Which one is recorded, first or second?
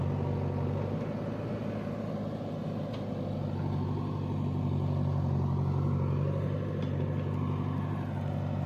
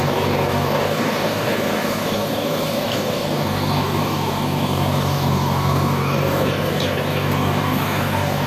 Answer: first